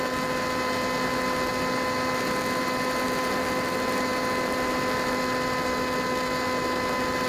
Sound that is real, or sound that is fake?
real